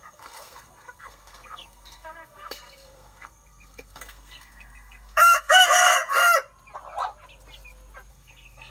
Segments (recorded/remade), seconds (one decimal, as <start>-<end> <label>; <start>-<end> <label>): 0.0-6.2 remade; 6.2-8.1 recorded; 8.1-8.7 remade